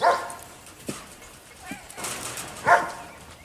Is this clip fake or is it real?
fake